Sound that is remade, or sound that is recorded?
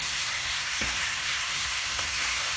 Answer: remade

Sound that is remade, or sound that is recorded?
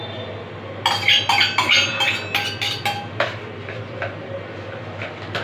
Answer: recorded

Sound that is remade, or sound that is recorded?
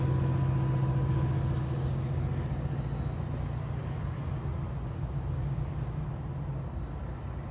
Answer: recorded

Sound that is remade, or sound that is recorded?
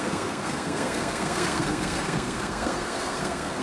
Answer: remade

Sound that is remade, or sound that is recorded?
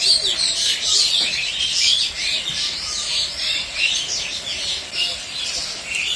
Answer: recorded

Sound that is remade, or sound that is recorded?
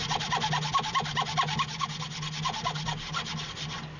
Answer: recorded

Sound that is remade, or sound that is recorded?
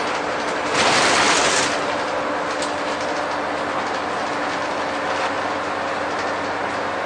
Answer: recorded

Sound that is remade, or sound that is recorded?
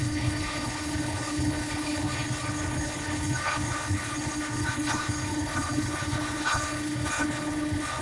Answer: remade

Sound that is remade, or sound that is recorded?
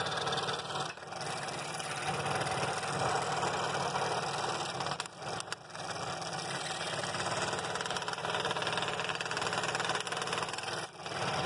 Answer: recorded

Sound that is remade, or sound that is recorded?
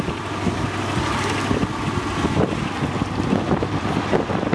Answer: recorded